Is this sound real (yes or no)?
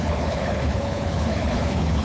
no